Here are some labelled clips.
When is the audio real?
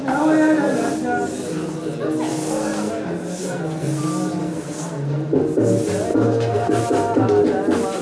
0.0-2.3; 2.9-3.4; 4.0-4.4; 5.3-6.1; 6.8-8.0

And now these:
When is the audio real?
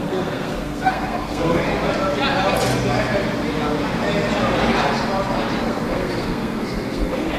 1.7-5.6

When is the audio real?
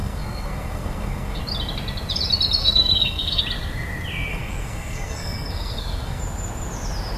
1.4-2.6; 3.4-4.3; 6.2-7.2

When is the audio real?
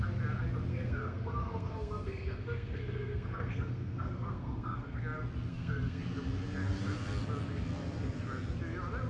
0.0-0.7; 5.0-5.5; 6.0-9.1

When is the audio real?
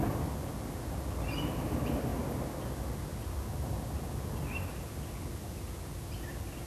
0.0-6.7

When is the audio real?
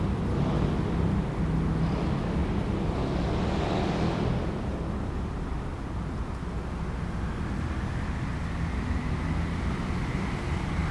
0.0-10.9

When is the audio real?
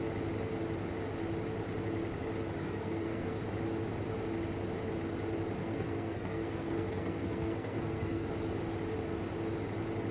0.0-2.6; 3.4-5.6; 8.3-10.1